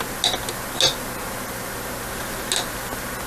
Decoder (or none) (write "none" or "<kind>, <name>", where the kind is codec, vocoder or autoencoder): none